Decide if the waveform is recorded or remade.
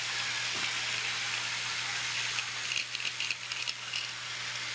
recorded